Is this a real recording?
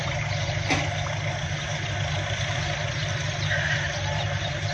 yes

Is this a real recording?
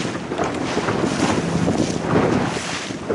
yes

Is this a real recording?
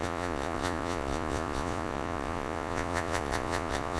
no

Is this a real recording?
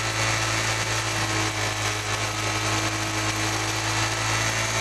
yes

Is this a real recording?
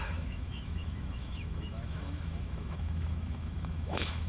no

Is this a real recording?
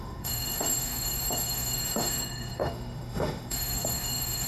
no